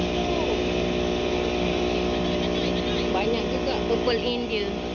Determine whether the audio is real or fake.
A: real